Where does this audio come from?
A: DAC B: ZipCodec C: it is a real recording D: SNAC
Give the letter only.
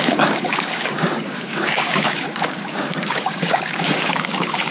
A